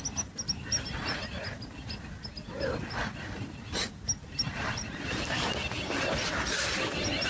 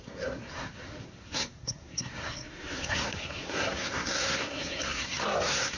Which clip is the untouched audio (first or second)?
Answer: first